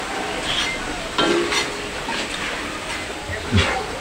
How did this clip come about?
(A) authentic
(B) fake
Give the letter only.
A